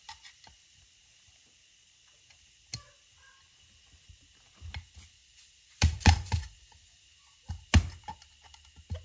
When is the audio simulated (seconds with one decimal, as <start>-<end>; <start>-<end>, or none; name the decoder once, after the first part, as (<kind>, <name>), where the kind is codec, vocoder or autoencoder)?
5.2-7.5 (vocoder, Vocos)